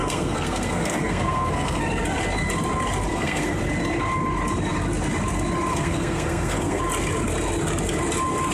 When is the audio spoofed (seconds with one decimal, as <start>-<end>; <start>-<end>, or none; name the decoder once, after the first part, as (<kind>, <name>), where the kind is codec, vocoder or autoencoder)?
0.0-1.8 (codec, SNAC); 3.1-3.6; 5.7-6.8